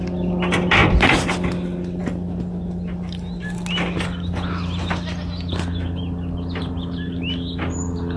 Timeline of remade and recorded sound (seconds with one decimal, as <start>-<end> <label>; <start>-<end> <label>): 0.0-0.8 recorded; 0.8-1.3 remade; 1.3-8.2 recorded